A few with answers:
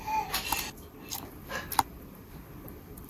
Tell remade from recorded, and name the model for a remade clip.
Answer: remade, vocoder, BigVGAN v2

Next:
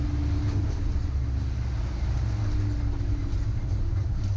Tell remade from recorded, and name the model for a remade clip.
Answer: recorded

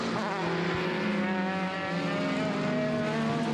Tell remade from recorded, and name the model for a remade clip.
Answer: recorded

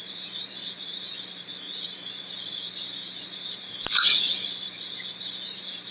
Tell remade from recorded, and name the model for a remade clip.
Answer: remade, vocoder, BigVGAN v2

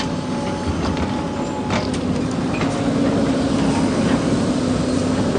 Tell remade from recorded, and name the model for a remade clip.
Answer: recorded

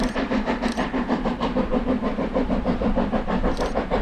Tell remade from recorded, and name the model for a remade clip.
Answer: remade, vocoder, BigVGAN v2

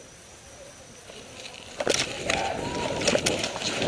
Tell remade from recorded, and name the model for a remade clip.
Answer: recorded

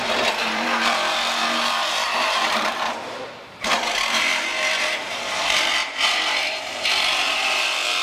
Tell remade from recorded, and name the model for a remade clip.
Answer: remade, vocoder, BigVGAN v2